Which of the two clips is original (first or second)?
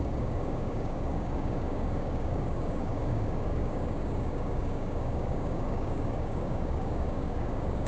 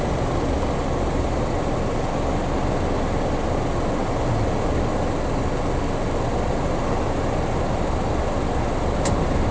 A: second